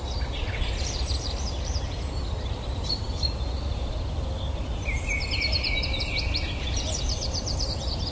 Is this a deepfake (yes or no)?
yes